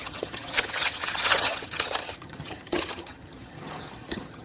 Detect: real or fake fake